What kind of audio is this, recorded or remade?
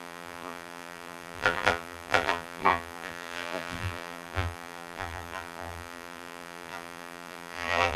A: remade